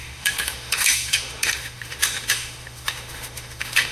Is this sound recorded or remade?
remade